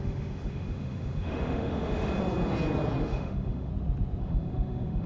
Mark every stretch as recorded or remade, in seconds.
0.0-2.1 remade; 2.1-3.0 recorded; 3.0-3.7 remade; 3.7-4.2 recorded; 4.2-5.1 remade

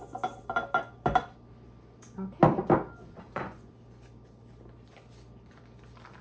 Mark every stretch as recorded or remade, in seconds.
0.0-3.0 recorded; 3.0-3.7 remade; 3.7-6.2 recorded

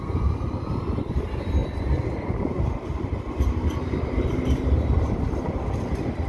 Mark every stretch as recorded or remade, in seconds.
0.0-6.3 recorded

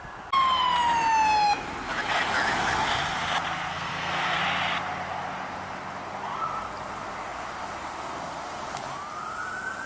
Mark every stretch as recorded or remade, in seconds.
0.0-3.7 recorded; 3.7-4.4 remade; 4.4-9.9 recorded